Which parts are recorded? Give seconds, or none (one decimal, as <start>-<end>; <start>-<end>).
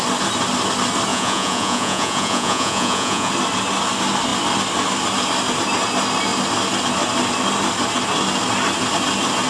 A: 0.0-1.1; 3.3-9.5